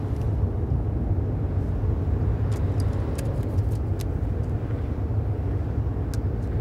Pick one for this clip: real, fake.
real